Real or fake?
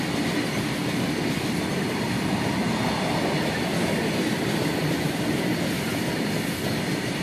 real